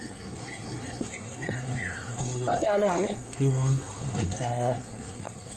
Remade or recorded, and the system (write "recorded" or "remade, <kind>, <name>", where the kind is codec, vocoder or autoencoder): remade, codec, SNAC